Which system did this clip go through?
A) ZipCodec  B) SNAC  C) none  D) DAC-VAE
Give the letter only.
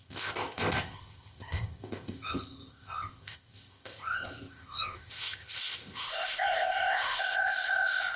A